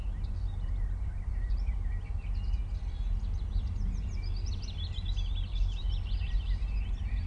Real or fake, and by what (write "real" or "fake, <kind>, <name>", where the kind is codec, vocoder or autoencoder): real